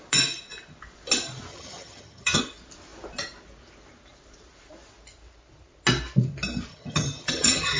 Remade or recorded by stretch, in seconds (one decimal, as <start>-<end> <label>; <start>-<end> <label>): 0.0-1.5 recorded; 1.5-2.4 remade; 2.4-6.7 recorded; 6.7-7.8 remade